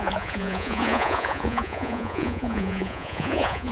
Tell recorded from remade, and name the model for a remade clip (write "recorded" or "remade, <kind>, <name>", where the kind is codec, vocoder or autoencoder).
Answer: remade, vocoder, Vocos